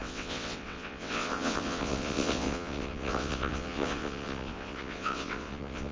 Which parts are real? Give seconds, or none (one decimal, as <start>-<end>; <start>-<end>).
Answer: none